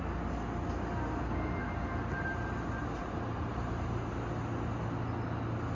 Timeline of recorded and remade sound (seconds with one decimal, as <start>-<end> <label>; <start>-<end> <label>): 0.0-3.0 recorded; 3.0-4.1 remade; 4.1-5.7 recorded